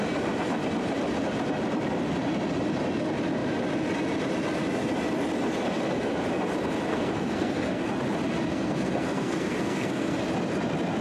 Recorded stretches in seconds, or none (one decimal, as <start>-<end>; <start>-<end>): 0.0-6.9; 7.9-8.5; 10.2-11.0